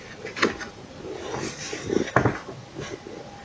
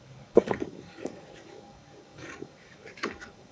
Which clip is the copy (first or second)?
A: second